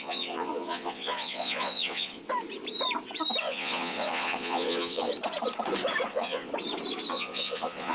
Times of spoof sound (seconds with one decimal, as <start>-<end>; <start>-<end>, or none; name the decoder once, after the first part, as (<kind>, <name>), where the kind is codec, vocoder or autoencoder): 0.0-2.2 (vocoder, Vocos); 3.4-5.1; 6.1-6.5; 7.1-7.9